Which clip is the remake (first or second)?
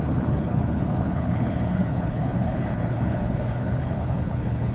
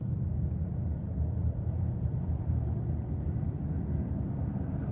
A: first